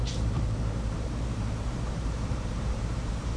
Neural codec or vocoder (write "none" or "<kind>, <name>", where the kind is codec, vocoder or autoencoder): vocoder, BigVGAN v2